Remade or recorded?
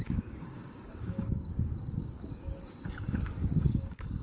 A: remade